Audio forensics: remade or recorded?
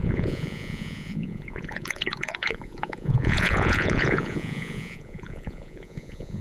remade